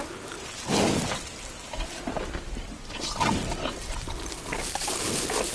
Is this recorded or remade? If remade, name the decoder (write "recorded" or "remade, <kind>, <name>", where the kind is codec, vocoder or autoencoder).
recorded